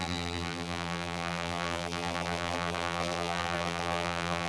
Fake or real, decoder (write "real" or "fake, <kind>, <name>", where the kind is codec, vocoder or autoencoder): fake, vocoder, BigVGAN v2